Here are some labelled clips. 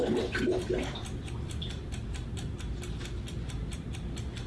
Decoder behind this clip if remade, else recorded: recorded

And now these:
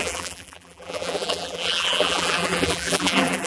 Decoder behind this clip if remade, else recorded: remade, vocoder, BigVGAN v2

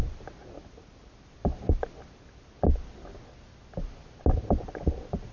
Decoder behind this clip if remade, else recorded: recorded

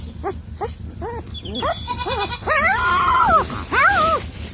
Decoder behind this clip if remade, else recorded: recorded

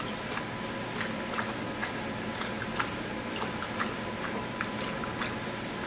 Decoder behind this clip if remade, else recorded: recorded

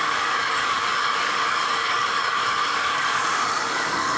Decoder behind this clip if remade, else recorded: remade, codec, DAC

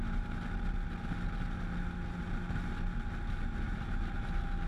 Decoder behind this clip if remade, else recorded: recorded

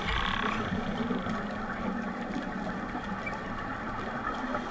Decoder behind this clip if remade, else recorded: recorded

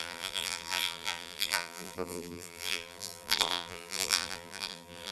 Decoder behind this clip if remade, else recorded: remade, vocoder, BigVGAN v2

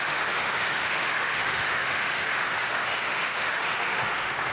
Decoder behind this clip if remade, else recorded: remade, autoencoder, DAC-VAE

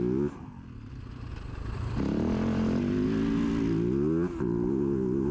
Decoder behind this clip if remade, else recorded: recorded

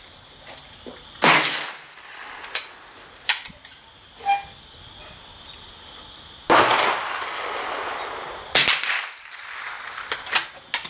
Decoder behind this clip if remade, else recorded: recorded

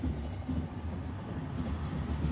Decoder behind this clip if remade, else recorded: recorded